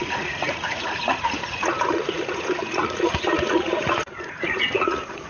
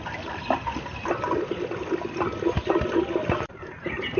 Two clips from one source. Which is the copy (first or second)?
first